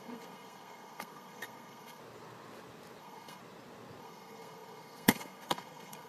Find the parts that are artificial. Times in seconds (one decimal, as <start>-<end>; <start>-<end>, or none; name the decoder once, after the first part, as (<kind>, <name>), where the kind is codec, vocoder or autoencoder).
0.0-2.0 (codec, SNAC); 3.0-3.4; 4.0-6.1